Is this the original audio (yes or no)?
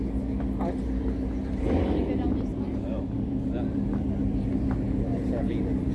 yes